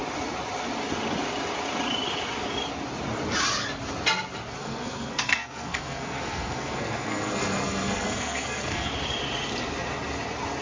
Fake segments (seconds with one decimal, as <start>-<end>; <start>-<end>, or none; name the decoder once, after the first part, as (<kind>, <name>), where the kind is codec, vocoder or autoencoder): 4.6-8.9 (codec, SNAC)